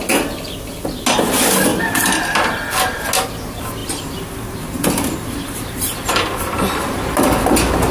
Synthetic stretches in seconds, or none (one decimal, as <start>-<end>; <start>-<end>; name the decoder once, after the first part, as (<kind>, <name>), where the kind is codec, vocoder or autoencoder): 3.8-7.9 (vocoder, BigVGAN v2)